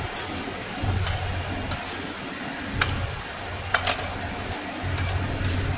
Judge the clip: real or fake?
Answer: real